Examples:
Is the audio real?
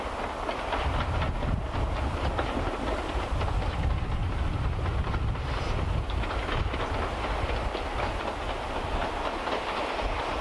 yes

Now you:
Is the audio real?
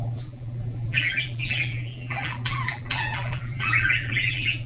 no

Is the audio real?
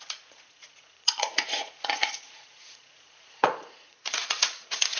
no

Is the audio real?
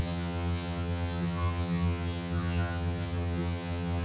no